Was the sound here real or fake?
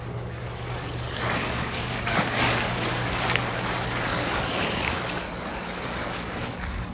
fake